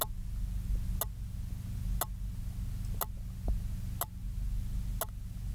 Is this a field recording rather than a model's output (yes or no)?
yes